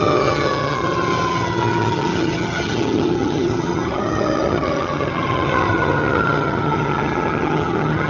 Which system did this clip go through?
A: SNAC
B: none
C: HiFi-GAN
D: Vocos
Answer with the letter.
C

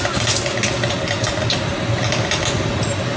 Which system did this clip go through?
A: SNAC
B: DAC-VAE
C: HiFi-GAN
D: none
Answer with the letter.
D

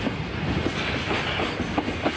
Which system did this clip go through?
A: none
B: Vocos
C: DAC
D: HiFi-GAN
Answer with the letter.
A